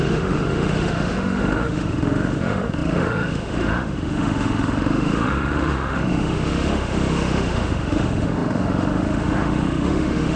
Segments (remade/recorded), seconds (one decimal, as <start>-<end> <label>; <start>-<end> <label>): 0.0-10.4 remade